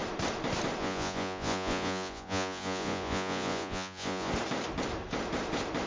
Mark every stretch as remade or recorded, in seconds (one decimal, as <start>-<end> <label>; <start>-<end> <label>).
0.0-0.8 recorded; 0.8-4.3 remade; 4.3-5.9 recorded